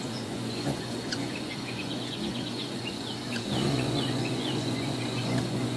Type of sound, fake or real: fake